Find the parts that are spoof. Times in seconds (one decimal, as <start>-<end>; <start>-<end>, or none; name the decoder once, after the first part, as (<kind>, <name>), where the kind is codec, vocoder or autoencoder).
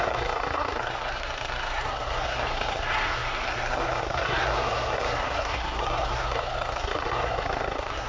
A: 0.0-8.1 (codec, SNAC)